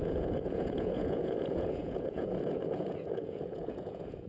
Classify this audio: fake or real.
fake